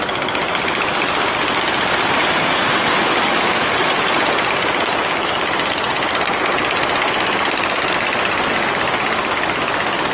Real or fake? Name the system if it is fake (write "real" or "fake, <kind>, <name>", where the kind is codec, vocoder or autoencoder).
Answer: real